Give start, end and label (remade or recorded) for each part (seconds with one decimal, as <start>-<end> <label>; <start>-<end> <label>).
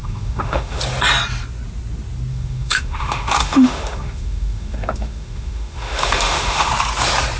0.0-0.8 remade; 0.8-2.3 recorded; 2.3-6.7 remade; 6.7-7.4 recorded